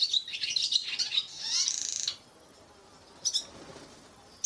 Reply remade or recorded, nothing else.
recorded